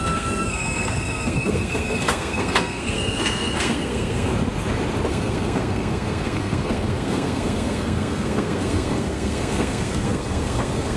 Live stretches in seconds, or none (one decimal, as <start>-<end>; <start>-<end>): 4.3-5.1